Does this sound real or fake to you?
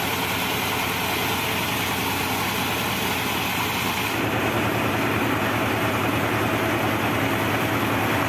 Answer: real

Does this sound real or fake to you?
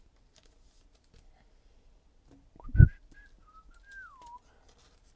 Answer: real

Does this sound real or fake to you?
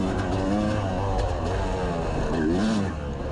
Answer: real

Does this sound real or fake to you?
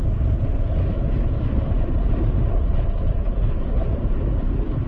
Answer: real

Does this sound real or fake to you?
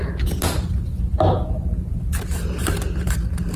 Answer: real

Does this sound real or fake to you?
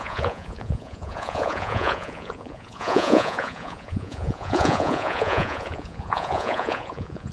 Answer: fake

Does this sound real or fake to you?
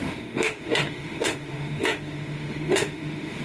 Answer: fake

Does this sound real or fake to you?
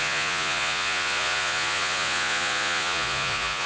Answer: fake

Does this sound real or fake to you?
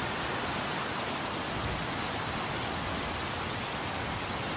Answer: real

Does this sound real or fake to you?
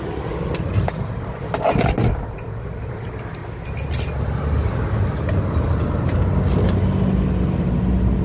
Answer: real